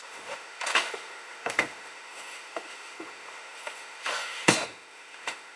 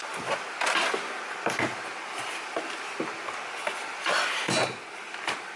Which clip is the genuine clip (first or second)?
second